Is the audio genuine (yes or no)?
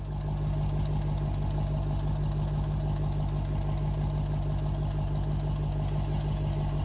yes